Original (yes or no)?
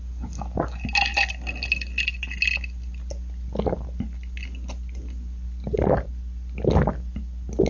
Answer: yes